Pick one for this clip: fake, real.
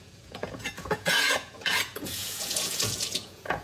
fake